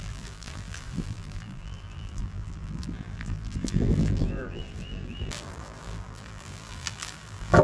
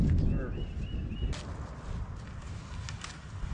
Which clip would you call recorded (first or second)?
second